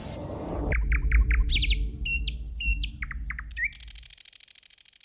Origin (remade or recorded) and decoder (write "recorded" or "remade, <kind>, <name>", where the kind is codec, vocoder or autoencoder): recorded